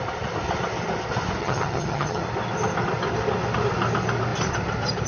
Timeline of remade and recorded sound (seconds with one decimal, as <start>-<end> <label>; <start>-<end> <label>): 0.0-1.4 recorded; 1.4-2.2 remade; 2.2-5.1 recorded